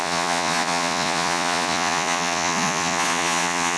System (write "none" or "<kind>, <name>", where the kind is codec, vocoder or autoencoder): vocoder, Vocos